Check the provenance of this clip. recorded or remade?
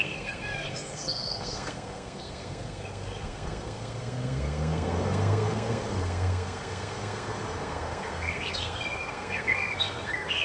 remade